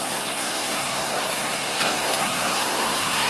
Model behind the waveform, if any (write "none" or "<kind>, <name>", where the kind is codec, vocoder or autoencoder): codec, SNAC